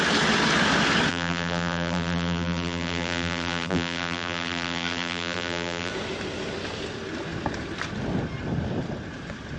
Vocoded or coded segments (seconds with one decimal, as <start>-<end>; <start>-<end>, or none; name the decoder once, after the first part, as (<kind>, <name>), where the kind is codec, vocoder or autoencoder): 1.1-5.9 (vocoder, BigVGAN v2)